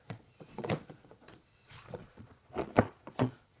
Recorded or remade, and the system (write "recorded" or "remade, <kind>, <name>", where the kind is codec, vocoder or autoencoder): remade, vocoder, Vocos